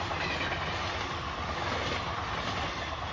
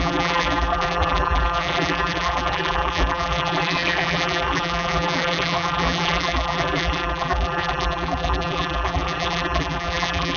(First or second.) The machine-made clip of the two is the second